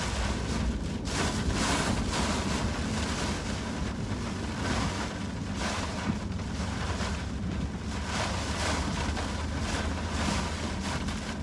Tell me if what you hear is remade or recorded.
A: recorded